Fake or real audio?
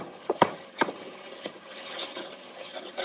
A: fake